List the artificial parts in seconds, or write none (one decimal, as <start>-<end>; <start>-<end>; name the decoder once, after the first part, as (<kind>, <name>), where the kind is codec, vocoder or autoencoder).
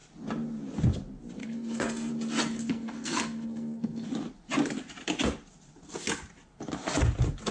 1.4-2.1 (codec, SNAC); 2.6-4.1